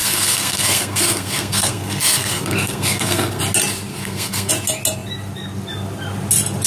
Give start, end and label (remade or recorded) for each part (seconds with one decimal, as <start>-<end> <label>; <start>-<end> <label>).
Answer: 0.0-3.4 remade; 3.4-3.9 recorded; 3.9-4.5 remade; 4.5-6.7 recorded